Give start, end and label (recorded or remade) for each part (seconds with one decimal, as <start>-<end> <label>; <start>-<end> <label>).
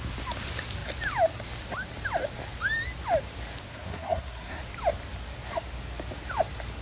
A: 0.0-3.7 recorded; 3.7-4.6 remade; 4.6-6.8 recorded